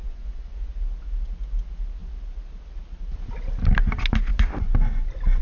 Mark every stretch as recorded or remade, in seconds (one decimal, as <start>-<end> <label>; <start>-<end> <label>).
0.0-0.7 remade; 0.7-5.4 recorded